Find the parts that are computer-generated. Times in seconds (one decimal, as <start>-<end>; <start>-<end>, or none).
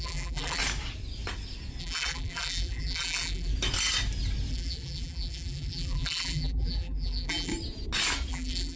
0.0-0.6; 1.8-3.5; 4.5-7.5; 8.3-8.8